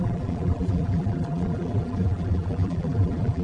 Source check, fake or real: fake